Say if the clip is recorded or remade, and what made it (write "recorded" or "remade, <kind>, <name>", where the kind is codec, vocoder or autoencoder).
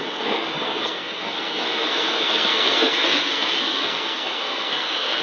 remade, codec, SNAC